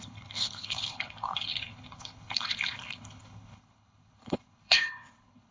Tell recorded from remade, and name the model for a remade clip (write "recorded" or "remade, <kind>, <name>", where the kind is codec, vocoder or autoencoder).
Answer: remade, codec, HILCodec